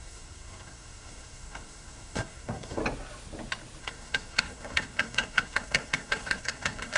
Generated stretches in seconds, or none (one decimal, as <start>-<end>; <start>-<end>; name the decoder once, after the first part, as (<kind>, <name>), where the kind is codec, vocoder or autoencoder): 0.0-2.8 (codec, SNAC); 3.8-7.0